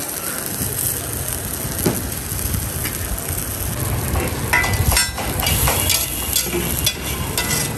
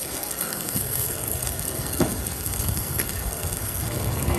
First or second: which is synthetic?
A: second